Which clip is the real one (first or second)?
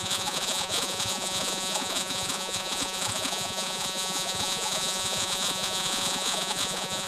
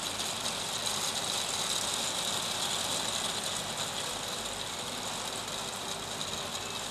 second